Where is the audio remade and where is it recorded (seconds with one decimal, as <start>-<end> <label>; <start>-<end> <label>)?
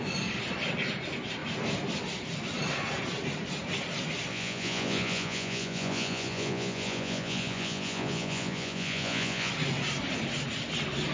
0.0-4.3 recorded; 4.3-9.5 remade; 9.5-11.1 recorded